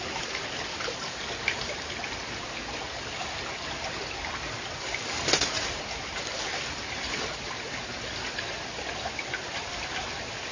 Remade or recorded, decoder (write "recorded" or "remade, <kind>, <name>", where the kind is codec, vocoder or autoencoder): recorded